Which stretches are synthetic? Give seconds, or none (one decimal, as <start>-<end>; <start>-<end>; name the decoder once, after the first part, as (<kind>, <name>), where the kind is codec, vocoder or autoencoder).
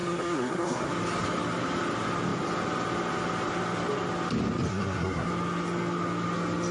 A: 0.0-0.9 (codec, SNAC); 4.7-5.3